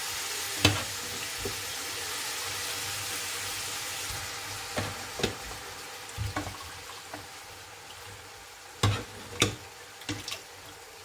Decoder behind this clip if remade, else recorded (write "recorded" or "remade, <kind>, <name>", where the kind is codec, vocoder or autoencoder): recorded